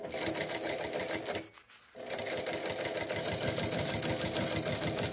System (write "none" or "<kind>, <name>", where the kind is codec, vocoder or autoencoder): none